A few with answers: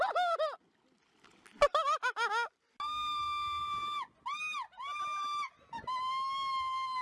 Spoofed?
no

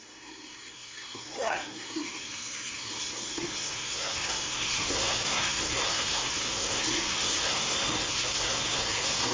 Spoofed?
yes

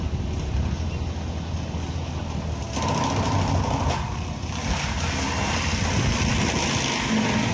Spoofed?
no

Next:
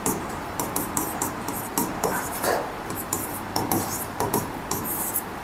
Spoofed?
yes